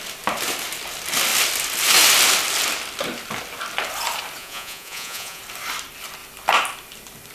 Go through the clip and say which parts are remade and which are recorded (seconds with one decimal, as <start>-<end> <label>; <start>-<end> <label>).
0.0-4.4 recorded; 4.4-5.4 remade; 5.4-7.3 recorded